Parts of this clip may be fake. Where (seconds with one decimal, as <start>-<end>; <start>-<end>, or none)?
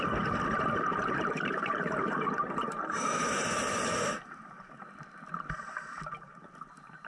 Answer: 0.9-4.2